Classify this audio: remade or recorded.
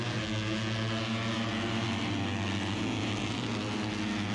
recorded